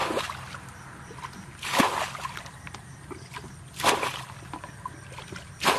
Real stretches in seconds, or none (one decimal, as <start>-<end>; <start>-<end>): 0.0-5.8